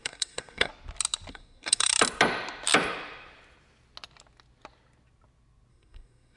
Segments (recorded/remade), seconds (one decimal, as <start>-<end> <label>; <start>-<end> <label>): 0.0-0.7 remade; 0.7-1.3 recorded; 1.3-1.9 remade; 1.9-5.7 recorded; 5.7-6.4 remade